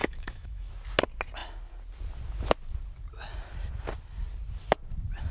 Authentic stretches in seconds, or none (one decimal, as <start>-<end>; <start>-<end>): 0.7-5.3